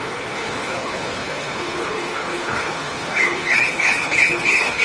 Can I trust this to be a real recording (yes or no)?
no